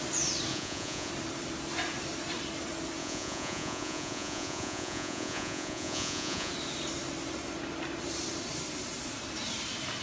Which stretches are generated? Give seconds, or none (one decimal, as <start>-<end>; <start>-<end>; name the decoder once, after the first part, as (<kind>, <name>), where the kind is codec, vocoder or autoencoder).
0.5-1.1 (vocoder, Vocos); 3.0-6.5